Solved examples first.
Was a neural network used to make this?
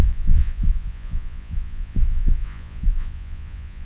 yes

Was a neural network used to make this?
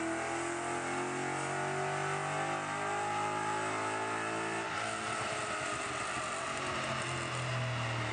no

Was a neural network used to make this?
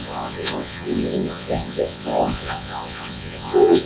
yes